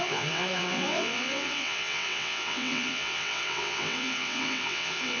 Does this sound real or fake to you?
fake